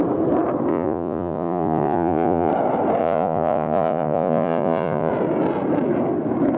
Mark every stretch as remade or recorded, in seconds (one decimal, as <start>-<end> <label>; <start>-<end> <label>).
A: 0.0-0.7 recorded; 0.7-2.5 remade; 2.5-3.0 recorded; 3.0-5.1 remade; 5.1-6.6 recorded